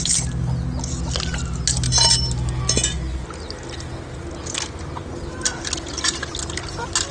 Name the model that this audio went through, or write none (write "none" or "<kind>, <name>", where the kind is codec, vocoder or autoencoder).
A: none